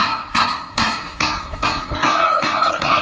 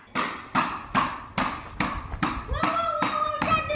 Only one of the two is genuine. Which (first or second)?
second